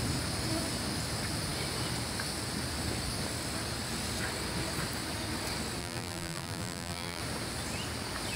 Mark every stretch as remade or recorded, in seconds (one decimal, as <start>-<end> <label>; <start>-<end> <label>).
0.0-5.8 recorded; 5.8-7.2 remade; 7.2-8.4 recorded